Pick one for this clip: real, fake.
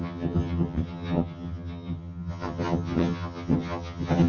fake